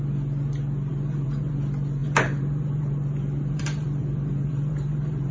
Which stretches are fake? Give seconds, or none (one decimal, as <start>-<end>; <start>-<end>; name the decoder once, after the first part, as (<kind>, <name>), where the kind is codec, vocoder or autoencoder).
0.9-1.5 (vocoder, BigVGAN v2); 2.0-5.3